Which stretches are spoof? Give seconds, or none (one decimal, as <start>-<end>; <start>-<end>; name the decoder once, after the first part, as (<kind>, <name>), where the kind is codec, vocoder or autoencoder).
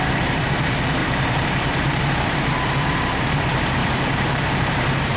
0.0-5.2 (vocoder, BigVGAN v2)